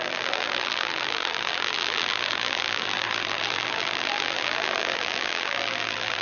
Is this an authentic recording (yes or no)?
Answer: no